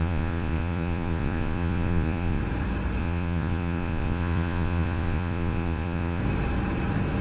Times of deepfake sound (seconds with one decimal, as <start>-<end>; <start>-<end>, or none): 0.0-2.4; 3.0-6.2